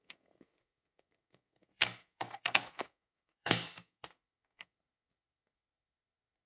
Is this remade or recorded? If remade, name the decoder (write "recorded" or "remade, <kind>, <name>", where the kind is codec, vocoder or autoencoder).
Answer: remade, codec, SNAC